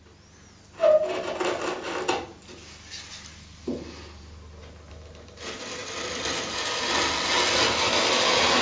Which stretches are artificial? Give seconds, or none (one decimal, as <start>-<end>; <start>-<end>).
none